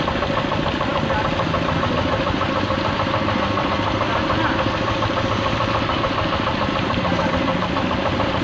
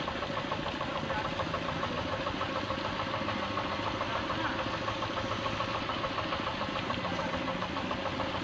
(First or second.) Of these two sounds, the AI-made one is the first